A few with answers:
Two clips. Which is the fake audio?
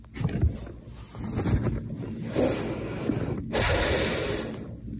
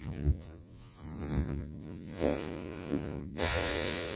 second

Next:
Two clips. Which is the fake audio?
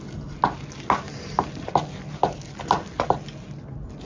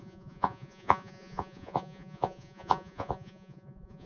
second